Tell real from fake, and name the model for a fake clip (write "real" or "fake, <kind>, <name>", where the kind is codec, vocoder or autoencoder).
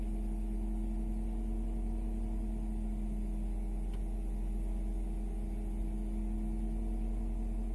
real